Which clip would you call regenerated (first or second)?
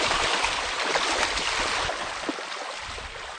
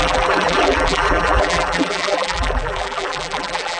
second